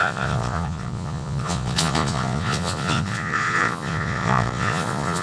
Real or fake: fake